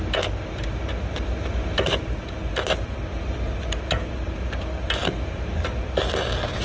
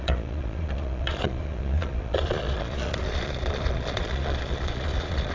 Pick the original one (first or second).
first